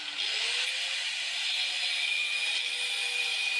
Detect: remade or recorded recorded